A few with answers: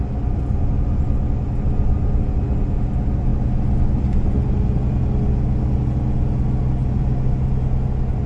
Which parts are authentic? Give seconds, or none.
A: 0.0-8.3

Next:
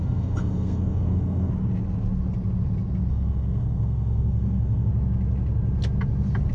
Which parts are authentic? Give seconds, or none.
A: 1.5-3.1; 4.9-6.5

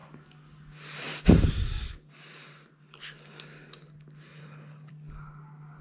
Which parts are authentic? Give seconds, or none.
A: 0.0-4.3; 4.9-5.8

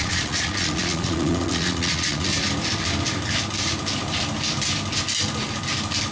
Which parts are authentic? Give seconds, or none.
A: 2.3-6.1

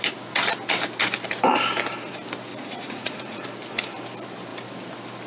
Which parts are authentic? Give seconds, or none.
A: 0.0-2.5; 3.4-5.3

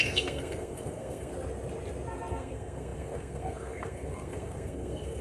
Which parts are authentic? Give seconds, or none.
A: 1.3-2.3